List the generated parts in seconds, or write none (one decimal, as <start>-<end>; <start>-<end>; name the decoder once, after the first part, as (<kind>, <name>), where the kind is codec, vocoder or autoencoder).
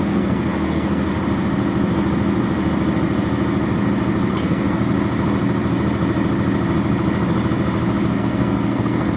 0.0-1.1 (codec, SNAC); 4.3-4.8; 8.1-9.2